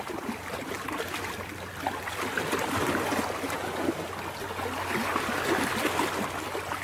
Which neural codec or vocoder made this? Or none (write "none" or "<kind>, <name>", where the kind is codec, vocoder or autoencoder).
none